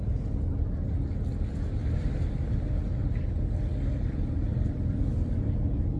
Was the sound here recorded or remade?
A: recorded